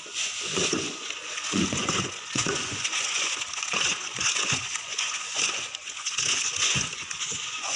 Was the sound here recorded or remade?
remade